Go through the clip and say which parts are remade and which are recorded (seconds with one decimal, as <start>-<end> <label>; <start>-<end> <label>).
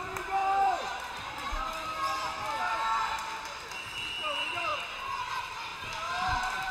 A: 0.0-4.7 remade; 4.7-5.3 recorded; 5.3-6.7 remade